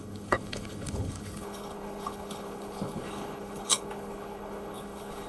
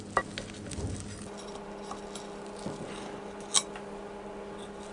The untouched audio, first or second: second